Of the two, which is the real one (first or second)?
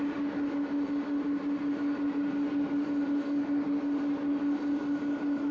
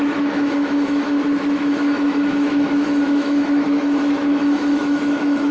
first